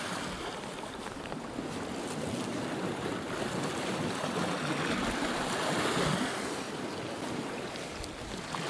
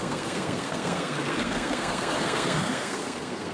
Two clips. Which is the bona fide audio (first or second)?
first